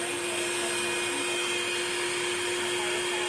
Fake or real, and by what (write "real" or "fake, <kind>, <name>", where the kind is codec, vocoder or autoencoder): real